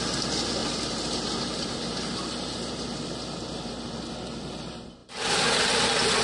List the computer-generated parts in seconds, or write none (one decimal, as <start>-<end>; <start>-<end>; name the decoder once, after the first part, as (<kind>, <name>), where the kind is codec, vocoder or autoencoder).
0.6-4.1 (vocoder, BigVGAN v2)